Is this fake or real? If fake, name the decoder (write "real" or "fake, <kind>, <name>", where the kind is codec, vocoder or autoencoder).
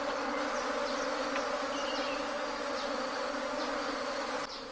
real